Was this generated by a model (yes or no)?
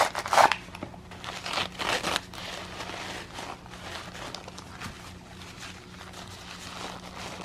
no